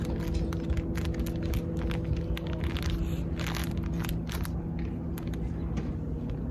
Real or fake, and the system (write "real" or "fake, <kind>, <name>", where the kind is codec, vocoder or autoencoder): real